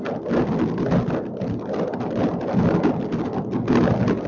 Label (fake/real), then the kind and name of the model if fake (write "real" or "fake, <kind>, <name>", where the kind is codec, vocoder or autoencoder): real